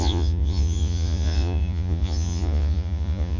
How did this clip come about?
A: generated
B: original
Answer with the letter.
A